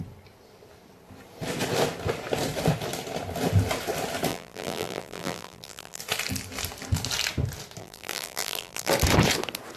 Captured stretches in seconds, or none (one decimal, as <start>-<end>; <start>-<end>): 0.0-4.3; 6.0-7.8; 8.9-9.8